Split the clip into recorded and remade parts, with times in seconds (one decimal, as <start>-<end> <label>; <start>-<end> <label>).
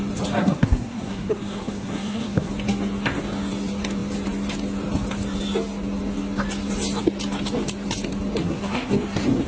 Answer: 0.0-0.4 recorded; 0.4-2.5 remade; 2.5-8.4 recorded; 8.4-8.9 remade; 8.9-9.5 recorded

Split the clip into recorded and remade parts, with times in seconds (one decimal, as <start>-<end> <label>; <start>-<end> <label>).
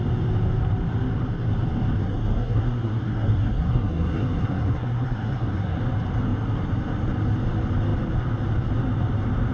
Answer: 0.0-2.0 recorded; 2.0-5.8 remade; 5.8-9.5 recorded